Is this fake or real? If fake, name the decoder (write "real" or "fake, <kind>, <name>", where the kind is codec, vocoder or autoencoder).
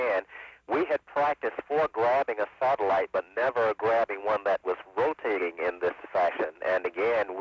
real